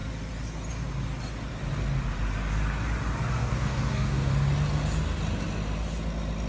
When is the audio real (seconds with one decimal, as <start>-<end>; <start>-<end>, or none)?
0.0-3.4; 4.3-6.5